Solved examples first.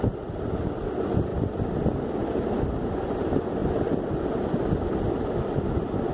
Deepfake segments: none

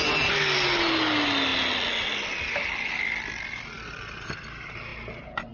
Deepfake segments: none

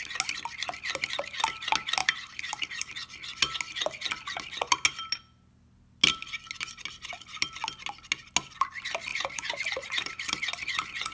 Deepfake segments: 2.0-2.9; 9.1-10.4

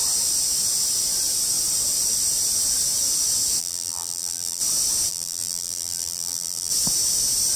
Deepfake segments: 3.6-4.6; 5.1-6.7

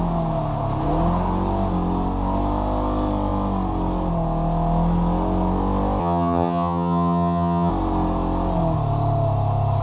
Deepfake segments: 6.0-7.7

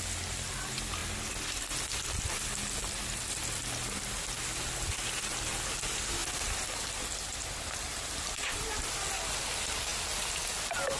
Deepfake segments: 6.2-8.9

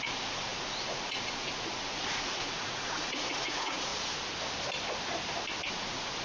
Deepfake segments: 0.0-3.9; 5.7-6.2